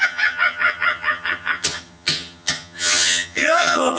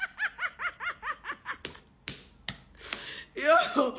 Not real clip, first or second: first